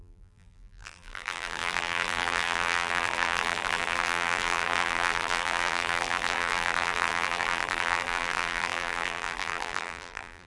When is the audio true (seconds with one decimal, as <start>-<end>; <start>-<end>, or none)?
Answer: none